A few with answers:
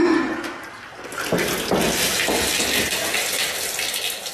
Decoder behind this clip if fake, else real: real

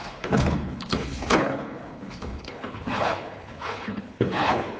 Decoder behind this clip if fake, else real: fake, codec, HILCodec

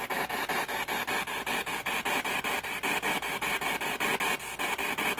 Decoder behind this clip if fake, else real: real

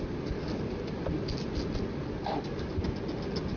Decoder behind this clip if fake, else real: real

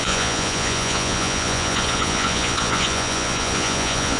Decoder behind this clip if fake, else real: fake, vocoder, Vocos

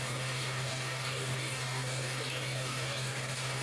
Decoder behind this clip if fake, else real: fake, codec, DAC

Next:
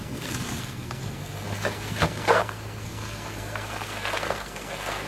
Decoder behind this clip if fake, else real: fake, codec, SNAC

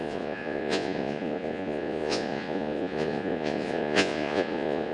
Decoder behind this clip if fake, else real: fake, vocoder, Vocos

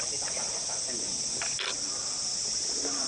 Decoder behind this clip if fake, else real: fake, vocoder, BigVGAN v2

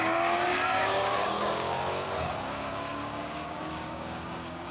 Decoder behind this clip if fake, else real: fake, codec, DAC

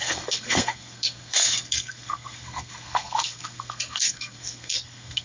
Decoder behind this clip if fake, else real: fake, codec, SNAC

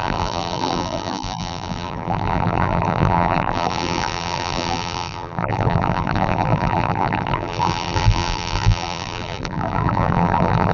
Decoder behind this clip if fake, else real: fake, vocoder, BigVGAN v2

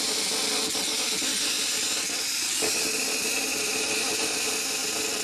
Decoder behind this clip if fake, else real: real